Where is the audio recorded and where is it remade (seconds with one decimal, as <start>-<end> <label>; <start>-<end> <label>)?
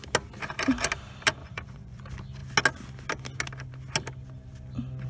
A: 0.0-1.4 recorded; 1.4-2.0 remade; 2.0-5.1 recorded